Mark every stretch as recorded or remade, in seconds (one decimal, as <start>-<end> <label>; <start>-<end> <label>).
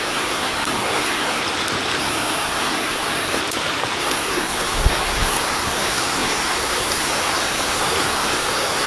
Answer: 0.0-1.4 remade; 1.4-2.0 recorded; 2.0-3.4 remade; 3.4-4.0 recorded; 4.0-8.9 remade